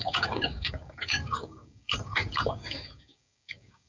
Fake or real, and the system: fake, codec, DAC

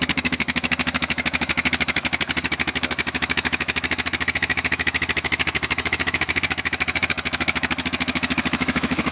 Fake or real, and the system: fake, autoencoder, DAC-VAE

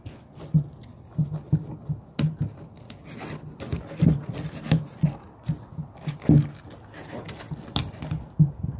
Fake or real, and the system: real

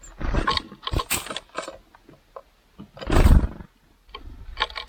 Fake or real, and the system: real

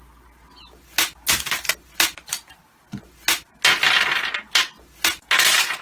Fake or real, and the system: real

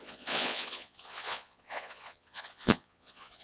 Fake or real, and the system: fake, vocoder, Vocos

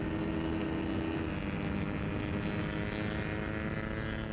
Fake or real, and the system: real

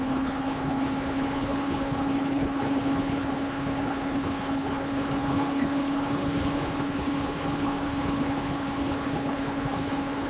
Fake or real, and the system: fake, codec, HILCodec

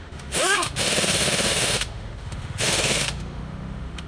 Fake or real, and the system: fake, autoencoder, DAC-VAE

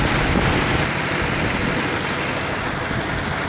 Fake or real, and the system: real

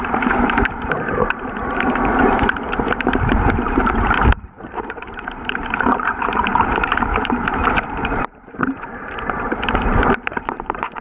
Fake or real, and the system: fake, vocoder, BigVGAN v2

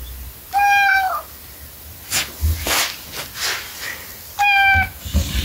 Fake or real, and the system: real